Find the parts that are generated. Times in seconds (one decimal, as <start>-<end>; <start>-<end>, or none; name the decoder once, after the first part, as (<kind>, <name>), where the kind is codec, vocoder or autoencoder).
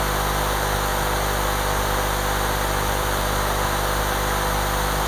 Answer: none